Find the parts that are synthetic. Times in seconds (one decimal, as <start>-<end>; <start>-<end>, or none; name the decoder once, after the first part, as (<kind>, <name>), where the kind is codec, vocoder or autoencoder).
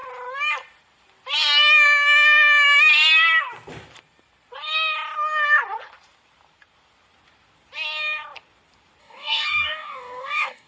9.0-10.7 (codec, DAC)